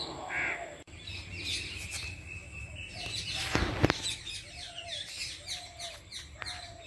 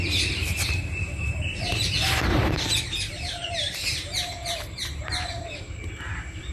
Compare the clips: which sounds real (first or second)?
first